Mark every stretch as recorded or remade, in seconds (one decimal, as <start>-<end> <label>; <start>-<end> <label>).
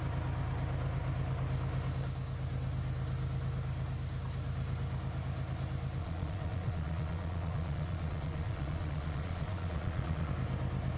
0.0-6.0 recorded; 6.0-10.3 remade; 10.3-11.0 recorded